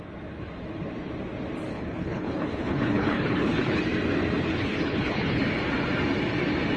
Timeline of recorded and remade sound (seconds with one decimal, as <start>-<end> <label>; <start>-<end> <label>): 0.0-1.7 recorded; 1.7-3.8 remade; 3.8-4.5 recorded; 4.5-5.4 remade; 5.4-6.8 recorded